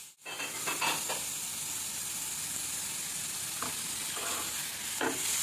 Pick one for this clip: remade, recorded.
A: recorded